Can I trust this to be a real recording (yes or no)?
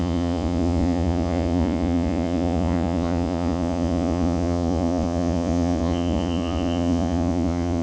no